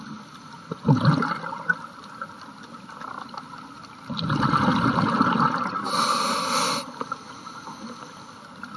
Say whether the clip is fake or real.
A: real